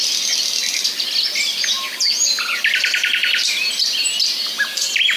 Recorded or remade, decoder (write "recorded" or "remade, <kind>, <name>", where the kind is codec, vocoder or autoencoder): recorded